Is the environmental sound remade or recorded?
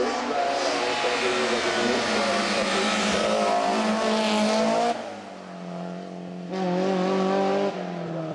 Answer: recorded